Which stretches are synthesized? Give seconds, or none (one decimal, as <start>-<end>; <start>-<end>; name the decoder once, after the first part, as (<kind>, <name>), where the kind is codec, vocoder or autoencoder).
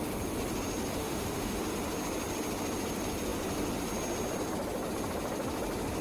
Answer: 1.0-1.7 (autoencoder, DAC-VAE)